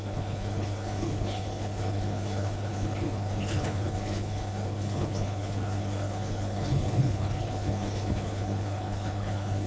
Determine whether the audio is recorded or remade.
remade